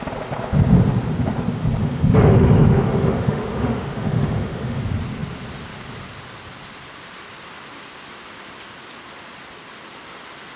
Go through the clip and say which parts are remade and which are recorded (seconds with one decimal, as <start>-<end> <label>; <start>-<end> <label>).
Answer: 0.0-1.8 recorded; 1.8-4.8 remade; 4.8-10.6 recorded